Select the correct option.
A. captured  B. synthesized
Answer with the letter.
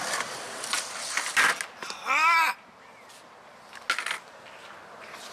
A